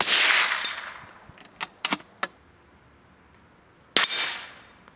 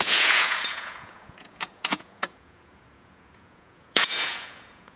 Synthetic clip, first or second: second